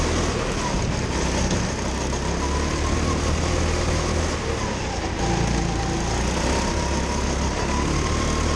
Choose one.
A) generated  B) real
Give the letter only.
B